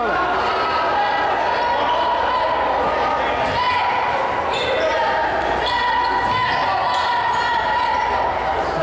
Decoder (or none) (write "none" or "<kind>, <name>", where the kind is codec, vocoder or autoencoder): none